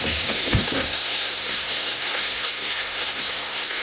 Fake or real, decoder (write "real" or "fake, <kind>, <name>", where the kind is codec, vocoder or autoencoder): fake, codec, SNAC